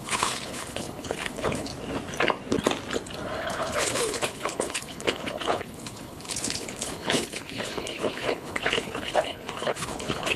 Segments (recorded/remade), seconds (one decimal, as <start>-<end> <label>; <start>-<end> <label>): 0.0-1.7 remade; 1.7-3.4 recorded; 3.4-10.4 remade